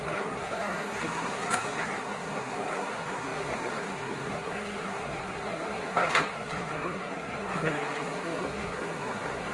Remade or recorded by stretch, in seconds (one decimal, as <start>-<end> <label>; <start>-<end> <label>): 0.0-9.5 remade